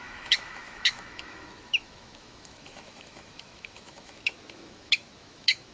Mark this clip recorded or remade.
remade